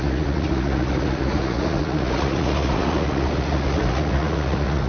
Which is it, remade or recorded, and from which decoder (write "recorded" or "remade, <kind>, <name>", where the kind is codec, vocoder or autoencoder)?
remade, vocoder, Vocos